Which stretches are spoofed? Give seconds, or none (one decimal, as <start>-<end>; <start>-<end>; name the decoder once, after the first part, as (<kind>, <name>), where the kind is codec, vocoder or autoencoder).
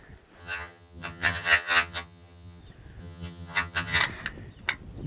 0.4-2.6 (vocoder, HiFi-GAN); 3.0-4.0